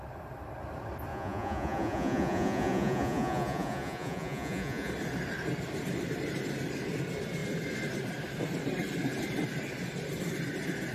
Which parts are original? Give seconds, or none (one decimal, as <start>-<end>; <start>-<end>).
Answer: 0.0-1.1; 4.9-10.9